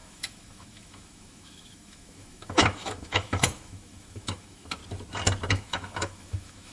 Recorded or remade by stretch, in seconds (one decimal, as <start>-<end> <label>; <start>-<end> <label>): 0.0-4.8 remade; 4.8-5.5 recorded; 5.5-6.7 remade